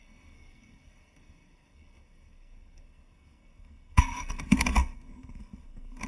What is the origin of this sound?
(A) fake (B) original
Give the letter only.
A